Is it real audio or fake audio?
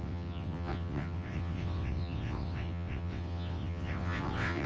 fake